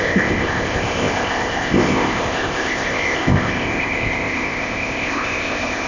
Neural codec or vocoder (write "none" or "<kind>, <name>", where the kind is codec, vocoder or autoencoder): codec, ZipCodec